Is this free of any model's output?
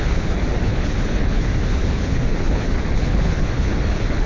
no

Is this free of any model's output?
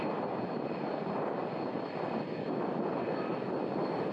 yes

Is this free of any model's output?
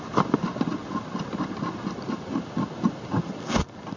yes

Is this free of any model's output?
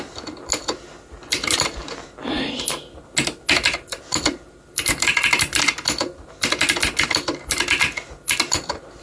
yes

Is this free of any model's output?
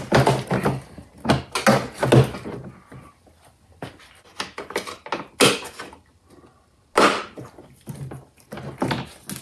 yes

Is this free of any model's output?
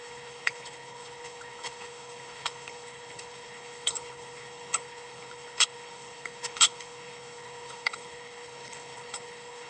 no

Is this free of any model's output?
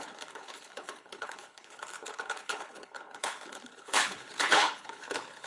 no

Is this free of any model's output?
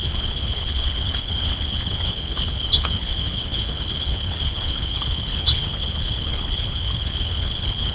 no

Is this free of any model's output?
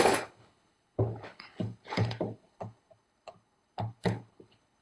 no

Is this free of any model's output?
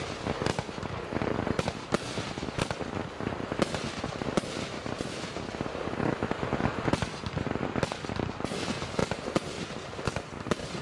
yes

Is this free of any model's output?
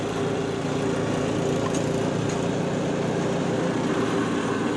yes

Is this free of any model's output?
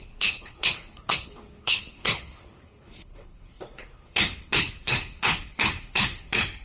no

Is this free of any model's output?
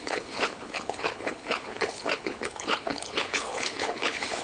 no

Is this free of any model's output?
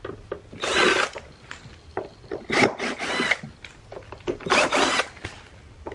yes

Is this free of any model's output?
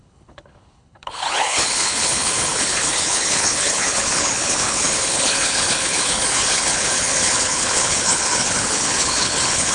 no